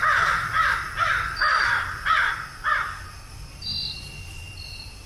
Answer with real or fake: real